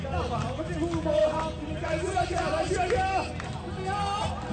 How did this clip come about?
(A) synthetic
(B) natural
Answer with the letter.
B